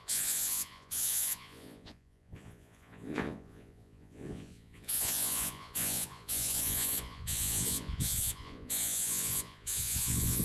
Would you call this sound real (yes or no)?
no